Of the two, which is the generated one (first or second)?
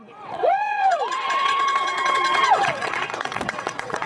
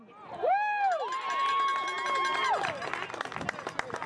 first